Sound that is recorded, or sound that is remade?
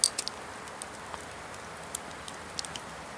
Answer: recorded